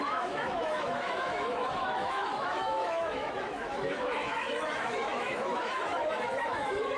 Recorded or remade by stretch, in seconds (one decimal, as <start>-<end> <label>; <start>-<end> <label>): 0.0-7.0 remade